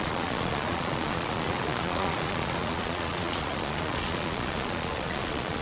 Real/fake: fake